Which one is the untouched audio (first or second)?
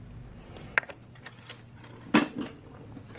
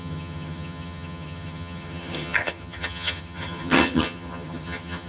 first